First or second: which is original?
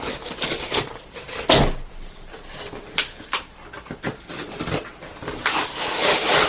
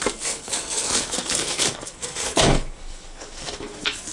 first